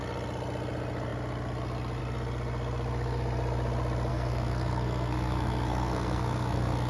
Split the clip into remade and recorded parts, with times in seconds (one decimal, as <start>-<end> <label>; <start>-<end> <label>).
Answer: 0.0-4.1 recorded; 4.1-6.9 remade